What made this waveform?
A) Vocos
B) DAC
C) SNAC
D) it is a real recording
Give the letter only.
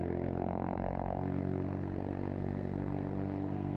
C